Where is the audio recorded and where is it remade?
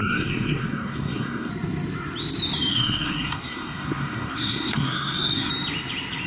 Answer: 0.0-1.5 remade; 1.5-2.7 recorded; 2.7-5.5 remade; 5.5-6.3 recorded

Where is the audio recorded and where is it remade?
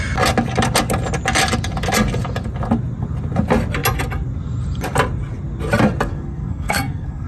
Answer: 0.0-6.1 recorded; 6.1-7.3 remade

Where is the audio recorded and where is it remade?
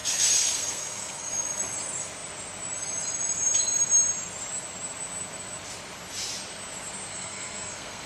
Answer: 0.0-1.3 remade; 1.3-7.1 recorded; 7.1-8.1 remade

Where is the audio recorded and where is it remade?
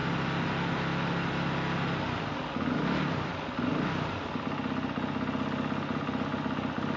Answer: 0.0-7.0 recorded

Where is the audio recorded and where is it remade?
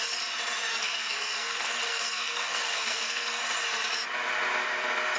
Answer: 0.0-0.7 recorded; 0.7-3.4 remade; 3.4-5.2 recorded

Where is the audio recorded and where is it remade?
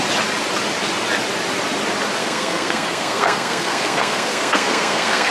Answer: 0.0-2.2 recorded; 2.2-5.3 remade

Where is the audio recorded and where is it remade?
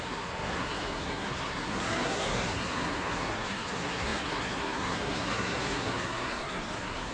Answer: 0.0-7.1 remade